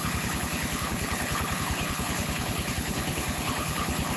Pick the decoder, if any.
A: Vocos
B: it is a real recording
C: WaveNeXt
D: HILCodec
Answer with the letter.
D